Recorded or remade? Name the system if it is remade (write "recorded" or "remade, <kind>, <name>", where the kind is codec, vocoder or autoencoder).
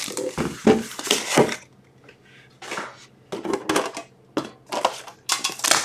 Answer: recorded